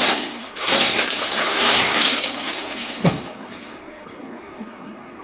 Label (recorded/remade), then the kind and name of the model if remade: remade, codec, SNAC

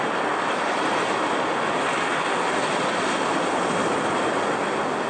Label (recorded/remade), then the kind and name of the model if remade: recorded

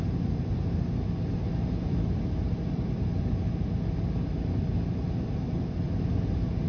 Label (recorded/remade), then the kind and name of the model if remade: recorded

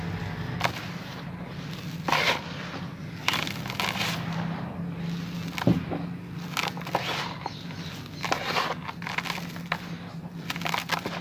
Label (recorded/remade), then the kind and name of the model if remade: recorded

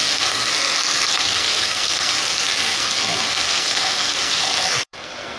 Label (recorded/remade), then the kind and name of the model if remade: remade, codec, SNAC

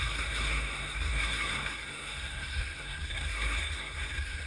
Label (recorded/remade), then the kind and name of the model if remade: remade, codec, SNAC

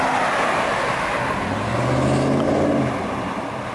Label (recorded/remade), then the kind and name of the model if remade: recorded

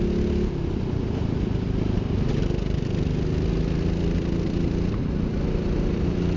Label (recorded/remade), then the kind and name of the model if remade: recorded